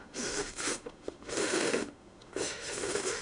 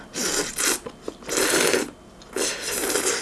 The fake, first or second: first